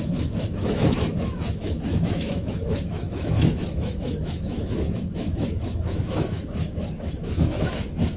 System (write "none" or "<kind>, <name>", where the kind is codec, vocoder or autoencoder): autoencoder, DAC-VAE